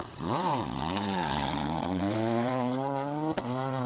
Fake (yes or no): yes